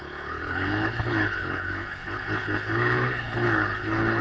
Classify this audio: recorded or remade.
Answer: remade